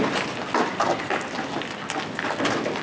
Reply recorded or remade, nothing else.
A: recorded